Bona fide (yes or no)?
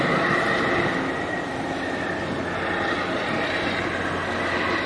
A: yes